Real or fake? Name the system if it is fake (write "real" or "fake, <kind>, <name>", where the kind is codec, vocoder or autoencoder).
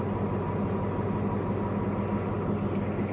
real